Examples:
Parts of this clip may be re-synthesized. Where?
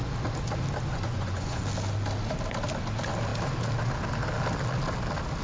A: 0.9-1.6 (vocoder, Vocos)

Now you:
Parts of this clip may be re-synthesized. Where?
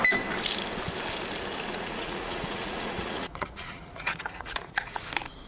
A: 1.7-5.0 (vocoder, Vocos)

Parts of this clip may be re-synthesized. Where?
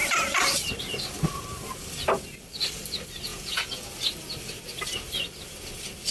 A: 3.3-3.9 (vocoder, Vocos)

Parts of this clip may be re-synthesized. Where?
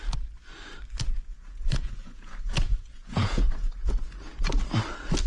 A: 1.3-3.9 (vocoder, Vocos)